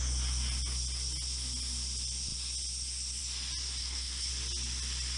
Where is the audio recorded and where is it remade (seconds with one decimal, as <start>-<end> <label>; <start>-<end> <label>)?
0.0-3.8 recorded; 3.8-4.3 remade; 4.3-5.2 recorded